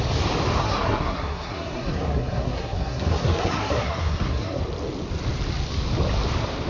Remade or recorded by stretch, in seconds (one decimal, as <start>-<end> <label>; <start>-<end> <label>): 0.0-0.6 recorded; 0.6-4.6 remade; 4.6-6.7 recorded